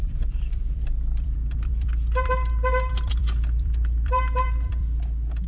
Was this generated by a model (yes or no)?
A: yes